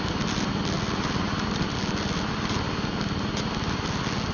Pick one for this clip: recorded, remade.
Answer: recorded